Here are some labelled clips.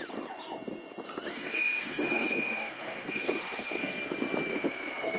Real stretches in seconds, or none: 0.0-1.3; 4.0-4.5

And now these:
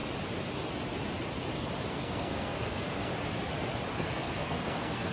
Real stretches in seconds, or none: 0.0-1.9; 3.1-3.9

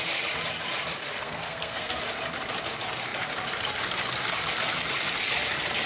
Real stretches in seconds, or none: 0.0-1.1; 2.0-5.9